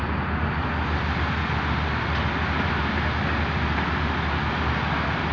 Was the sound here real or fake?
real